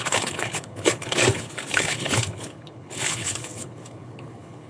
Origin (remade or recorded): remade